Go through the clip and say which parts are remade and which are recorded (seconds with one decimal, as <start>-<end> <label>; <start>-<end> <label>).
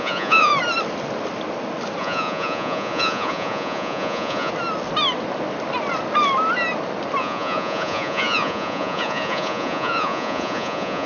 0.0-0.5 remade; 0.5-2.0 recorded; 2.0-4.5 remade; 4.5-7.2 recorded; 7.2-11.1 remade